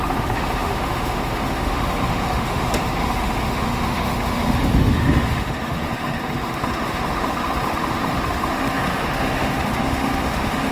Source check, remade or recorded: remade